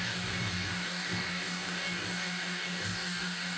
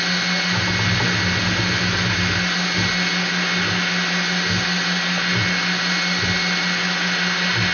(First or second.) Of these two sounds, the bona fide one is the second